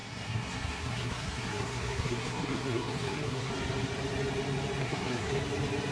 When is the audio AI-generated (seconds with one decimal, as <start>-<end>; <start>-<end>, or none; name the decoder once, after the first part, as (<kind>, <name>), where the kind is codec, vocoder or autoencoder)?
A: 0.0-3.5 (codec, SNAC); 4.8-5.4